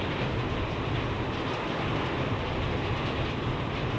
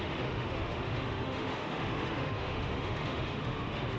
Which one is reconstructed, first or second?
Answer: second